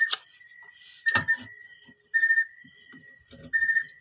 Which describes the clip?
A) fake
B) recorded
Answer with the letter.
B